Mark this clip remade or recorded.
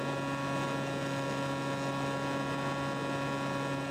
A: recorded